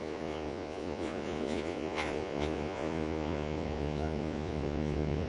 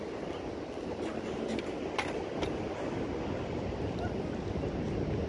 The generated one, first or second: first